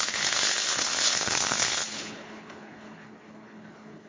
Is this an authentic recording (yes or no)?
no